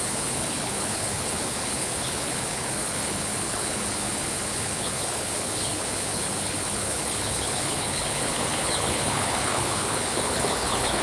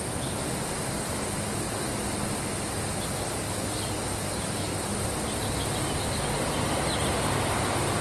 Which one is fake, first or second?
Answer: first